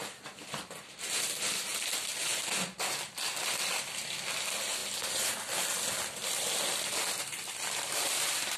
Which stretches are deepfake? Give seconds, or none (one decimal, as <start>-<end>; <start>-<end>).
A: none